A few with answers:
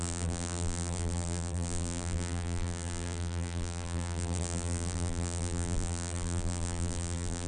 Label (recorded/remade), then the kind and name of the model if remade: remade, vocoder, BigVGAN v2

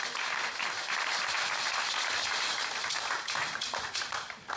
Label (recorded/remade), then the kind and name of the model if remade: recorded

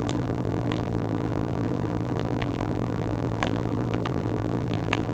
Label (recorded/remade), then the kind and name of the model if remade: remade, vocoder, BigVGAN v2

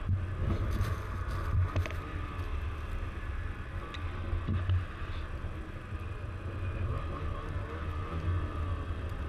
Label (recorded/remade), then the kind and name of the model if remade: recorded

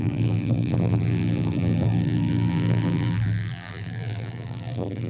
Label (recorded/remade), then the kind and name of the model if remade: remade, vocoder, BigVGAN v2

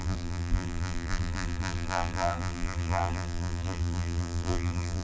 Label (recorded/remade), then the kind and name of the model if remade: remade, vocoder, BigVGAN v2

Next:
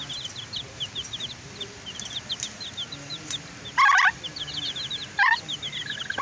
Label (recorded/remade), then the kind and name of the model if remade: remade, vocoder, BigVGAN v2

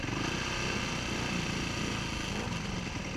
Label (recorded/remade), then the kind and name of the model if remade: recorded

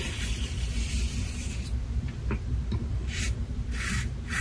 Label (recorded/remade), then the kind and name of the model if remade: remade, vocoder, BigVGAN v2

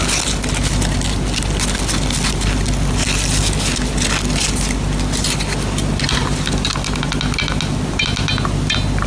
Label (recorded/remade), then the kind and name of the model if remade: recorded